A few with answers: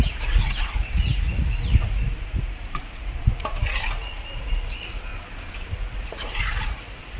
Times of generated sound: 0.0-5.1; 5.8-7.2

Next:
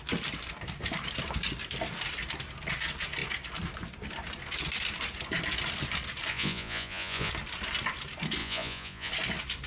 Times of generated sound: 6.3-7.3; 8.4-9.1